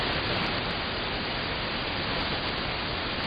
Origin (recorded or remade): recorded